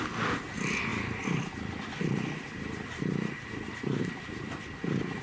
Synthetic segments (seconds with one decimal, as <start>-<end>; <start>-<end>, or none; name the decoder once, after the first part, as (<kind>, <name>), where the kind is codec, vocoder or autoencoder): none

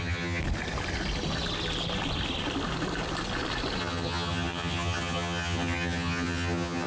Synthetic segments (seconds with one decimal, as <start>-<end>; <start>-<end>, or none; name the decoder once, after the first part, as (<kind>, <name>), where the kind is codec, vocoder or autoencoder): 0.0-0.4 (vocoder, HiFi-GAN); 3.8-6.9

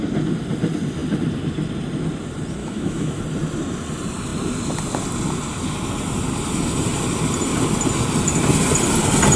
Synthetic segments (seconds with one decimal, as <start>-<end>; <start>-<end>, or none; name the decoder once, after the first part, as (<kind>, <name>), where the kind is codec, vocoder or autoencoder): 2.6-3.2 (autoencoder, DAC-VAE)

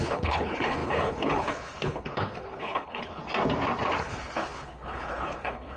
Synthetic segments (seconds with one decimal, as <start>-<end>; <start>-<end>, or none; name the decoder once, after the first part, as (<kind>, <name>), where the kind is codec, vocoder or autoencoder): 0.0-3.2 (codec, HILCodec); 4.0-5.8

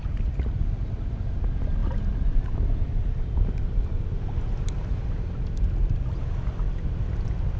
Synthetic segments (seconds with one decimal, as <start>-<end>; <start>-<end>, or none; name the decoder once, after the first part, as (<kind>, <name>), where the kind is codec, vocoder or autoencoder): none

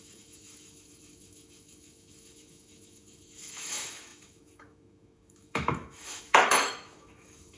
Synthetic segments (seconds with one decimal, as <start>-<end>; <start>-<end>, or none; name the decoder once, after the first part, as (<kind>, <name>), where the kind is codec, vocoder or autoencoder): 0.0-7.6 (autoencoder, DAC-VAE)

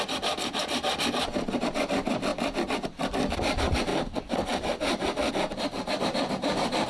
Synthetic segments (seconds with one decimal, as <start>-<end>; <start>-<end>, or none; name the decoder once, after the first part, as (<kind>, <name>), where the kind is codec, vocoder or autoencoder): 0.0-2.3 (vocoder, BigVGAN v2); 3.3-6.9

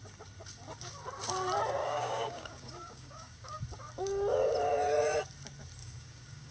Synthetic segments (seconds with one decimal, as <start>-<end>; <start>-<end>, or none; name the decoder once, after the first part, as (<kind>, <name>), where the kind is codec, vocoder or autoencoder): 1.8-3.6 (codec, DAC); 5.8-6.5